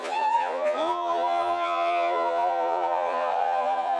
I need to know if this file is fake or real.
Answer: fake